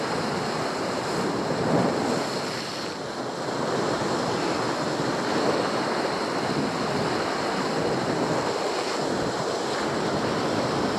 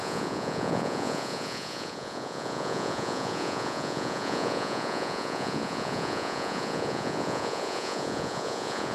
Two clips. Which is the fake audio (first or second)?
second